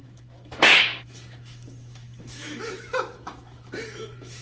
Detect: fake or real fake